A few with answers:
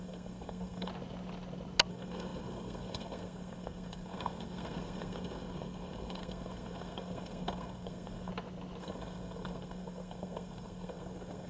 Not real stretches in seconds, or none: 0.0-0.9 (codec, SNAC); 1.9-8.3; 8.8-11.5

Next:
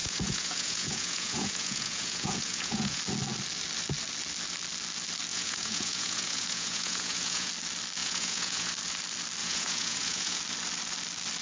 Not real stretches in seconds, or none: 0.0-3.0 (vocoder, Vocos); 5.3-7.5; 8.0-8.7; 9.4-10.4

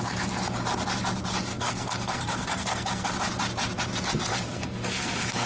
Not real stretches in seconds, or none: 1.5-3.1 (codec, SNAC); 4.3-5.5

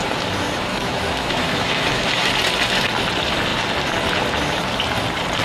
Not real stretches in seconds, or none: 0.7-2.3 (autoencoder, DAC-VAE)

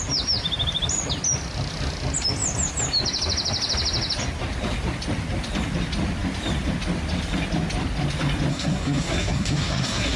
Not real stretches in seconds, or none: 8.5-10.2 (codec, SNAC)

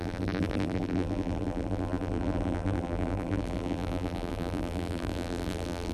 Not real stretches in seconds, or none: 0.0-5.9 (vocoder, BigVGAN v2)